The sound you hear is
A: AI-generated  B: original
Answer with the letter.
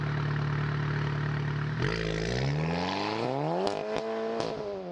B